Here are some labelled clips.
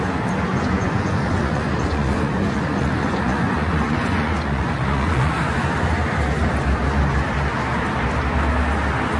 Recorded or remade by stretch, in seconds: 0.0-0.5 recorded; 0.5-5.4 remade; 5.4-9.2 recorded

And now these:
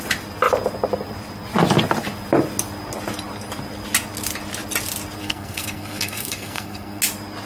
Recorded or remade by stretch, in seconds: 0.0-5.2 recorded; 5.2-7.0 remade; 7.0-7.5 recorded

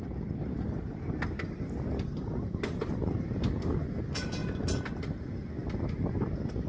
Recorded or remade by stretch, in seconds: 0.0-6.7 recorded